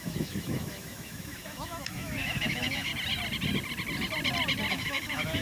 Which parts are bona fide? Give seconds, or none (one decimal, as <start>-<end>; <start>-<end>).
2.9-4.7